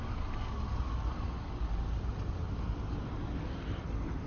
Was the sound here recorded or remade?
recorded